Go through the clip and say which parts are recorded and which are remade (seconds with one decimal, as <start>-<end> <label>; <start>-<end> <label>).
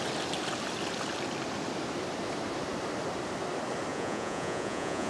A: 0.0-3.9 recorded; 3.9-5.1 remade